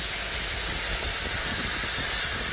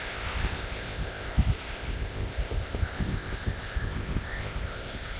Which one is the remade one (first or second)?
second